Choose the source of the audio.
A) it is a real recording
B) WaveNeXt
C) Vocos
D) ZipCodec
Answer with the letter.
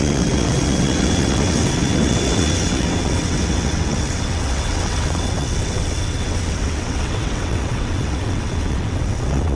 B